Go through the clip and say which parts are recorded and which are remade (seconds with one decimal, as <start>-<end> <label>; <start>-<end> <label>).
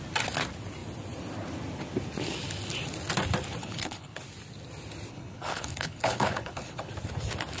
0.0-3.6 recorded; 3.6-4.2 remade; 4.2-5.1 recorded; 5.1-6.9 remade; 6.9-7.6 recorded